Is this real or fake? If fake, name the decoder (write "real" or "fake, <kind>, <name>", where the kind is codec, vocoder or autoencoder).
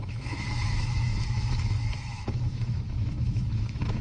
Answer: fake, autoencoder, DAC-VAE